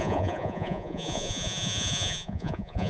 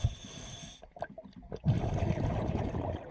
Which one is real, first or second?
second